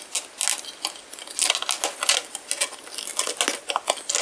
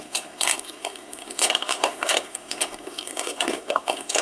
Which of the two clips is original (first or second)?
first